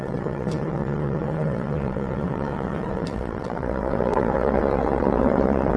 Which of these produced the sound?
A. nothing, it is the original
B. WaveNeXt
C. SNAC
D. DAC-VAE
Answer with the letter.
B